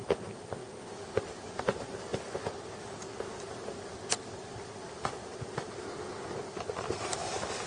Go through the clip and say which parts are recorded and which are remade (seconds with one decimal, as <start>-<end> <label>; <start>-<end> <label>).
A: 0.0-7.7 recorded